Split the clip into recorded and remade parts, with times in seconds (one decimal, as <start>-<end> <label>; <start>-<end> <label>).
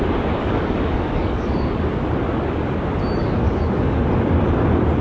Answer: 0.0-0.4 recorded; 0.4-1.8 remade; 1.8-3.2 recorded; 3.2-4.0 remade; 4.0-5.0 recorded